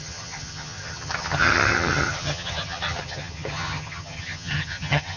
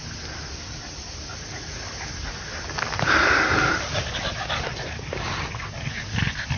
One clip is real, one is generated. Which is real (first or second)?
second